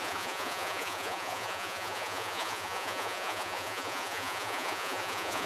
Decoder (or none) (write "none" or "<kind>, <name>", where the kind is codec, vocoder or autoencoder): vocoder, Vocos